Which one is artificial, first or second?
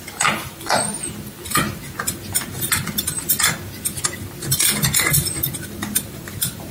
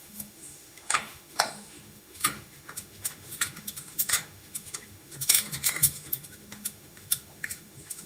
second